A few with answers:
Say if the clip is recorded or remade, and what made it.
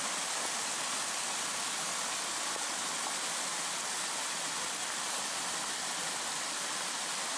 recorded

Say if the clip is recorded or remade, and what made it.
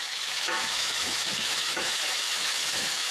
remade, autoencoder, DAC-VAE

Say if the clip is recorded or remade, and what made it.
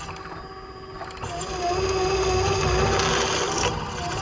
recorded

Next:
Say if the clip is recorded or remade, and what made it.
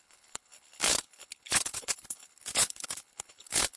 remade, codec, HILCodec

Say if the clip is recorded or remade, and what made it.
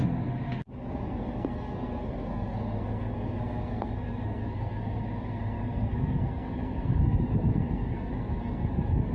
remade, codec, SNAC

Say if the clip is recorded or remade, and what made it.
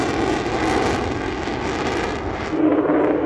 recorded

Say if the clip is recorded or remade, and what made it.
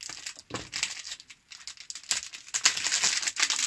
recorded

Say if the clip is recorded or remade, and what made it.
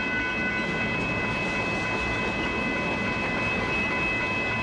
recorded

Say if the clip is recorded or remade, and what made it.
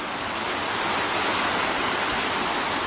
recorded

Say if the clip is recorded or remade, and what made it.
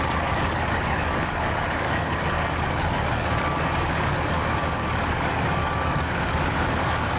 remade, codec, DAC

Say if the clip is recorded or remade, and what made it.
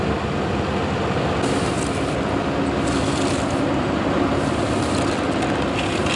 recorded